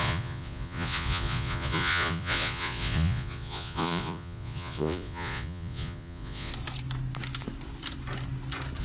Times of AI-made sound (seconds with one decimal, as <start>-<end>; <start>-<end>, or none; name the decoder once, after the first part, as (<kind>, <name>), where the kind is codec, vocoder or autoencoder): 0.0-6.5 (vocoder, Vocos)

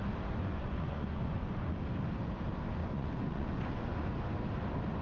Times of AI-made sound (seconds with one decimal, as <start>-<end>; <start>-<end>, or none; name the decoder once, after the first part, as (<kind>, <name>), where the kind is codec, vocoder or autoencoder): 0.4-1.8 (vocoder, Vocos); 2.8-4.1

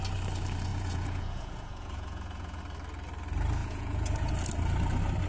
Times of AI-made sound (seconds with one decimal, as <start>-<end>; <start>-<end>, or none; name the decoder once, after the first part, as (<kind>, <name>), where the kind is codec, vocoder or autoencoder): 0.7-2.6 (vocoder, Vocos); 3.6-4.3

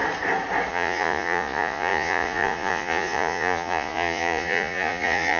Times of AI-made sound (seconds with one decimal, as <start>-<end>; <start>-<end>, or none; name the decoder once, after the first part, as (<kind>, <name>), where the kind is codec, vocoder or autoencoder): 0.7-5.4 (vocoder, Vocos)

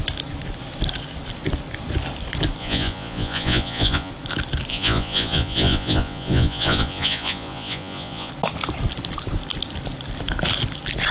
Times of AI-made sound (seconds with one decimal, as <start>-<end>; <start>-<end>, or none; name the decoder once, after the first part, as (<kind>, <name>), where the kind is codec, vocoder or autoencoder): 2.6-4.1 (vocoder, Vocos); 4.7-8.3

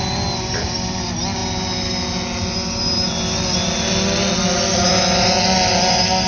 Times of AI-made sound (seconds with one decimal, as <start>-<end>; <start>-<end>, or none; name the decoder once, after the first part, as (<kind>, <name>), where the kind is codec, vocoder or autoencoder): none